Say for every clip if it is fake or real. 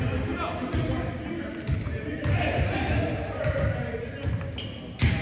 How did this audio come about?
real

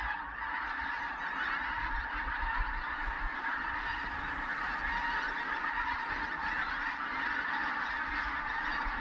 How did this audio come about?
real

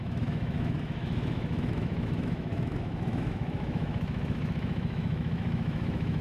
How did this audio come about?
fake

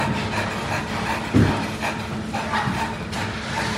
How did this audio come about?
real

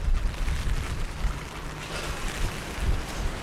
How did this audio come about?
fake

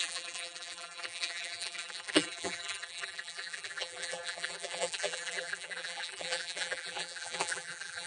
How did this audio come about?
fake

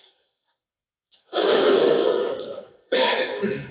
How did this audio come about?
fake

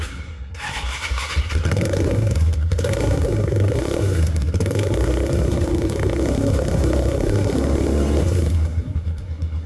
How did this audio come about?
fake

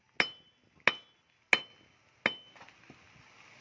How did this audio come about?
real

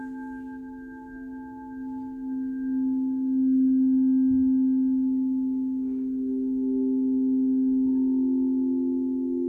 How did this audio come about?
real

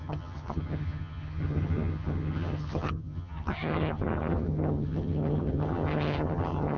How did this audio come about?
fake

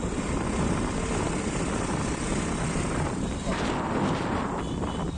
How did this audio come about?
fake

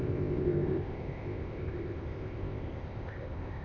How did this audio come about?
fake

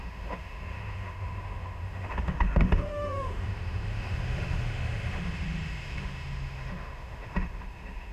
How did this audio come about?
fake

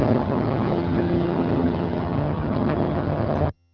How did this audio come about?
fake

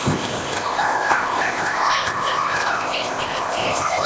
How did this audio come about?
fake